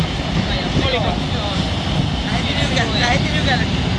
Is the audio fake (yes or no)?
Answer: no